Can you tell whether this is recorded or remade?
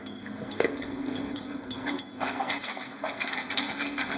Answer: remade